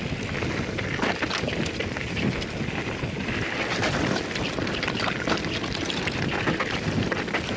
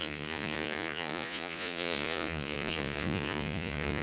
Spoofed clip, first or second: second